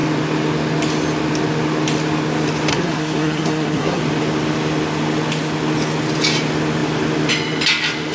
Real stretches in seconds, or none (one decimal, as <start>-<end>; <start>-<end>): 0.0-2.7; 4.0-8.1